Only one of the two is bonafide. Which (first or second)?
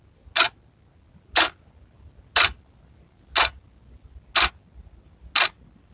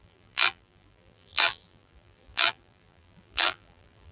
first